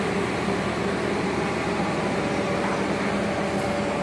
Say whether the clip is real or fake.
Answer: real